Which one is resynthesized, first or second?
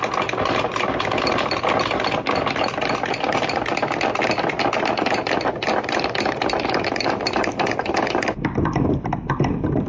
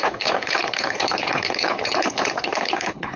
second